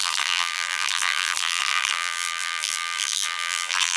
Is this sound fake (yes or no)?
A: yes